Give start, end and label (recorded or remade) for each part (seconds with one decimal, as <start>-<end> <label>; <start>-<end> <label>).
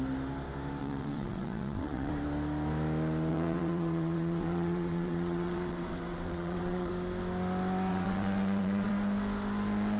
0.0-0.8 recorded; 0.8-2.1 remade; 2.1-3.3 recorded; 3.3-6.9 remade; 6.9-7.9 recorded; 7.9-8.9 remade; 8.9-10.0 recorded